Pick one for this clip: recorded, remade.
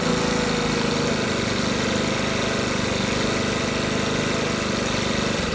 recorded